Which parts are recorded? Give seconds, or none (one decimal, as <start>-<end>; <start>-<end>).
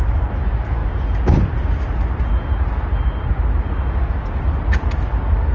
0.0-5.5